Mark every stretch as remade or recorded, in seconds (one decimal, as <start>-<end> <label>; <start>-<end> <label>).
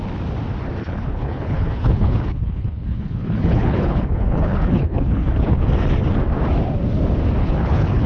0.0-0.8 recorded; 0.8-5.7 remade; 5.7-7.4 recorded; 7.4-8.1 remade